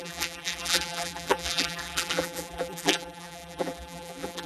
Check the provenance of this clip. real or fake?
fake